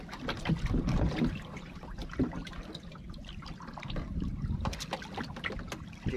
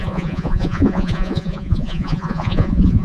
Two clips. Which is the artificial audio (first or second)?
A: second